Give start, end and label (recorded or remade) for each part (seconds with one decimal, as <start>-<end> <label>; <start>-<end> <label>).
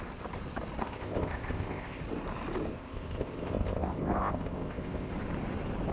0.0-0.8 recorded; 0.8-2.0 remade; 2.0-2.7 recorded; 2.7-5.1 remade; 5.1-5.9 recorded